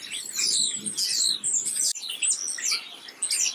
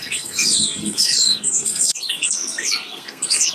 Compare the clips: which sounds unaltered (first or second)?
first